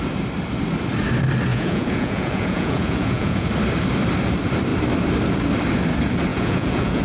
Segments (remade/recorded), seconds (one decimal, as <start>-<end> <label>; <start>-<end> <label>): 0.0-1.5 recorded; 1.5-3.5 remade; 3.5-6.3 recorded; 6.3-7.0 remade